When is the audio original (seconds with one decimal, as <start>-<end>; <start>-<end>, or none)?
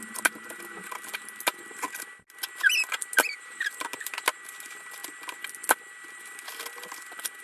0.0-7.4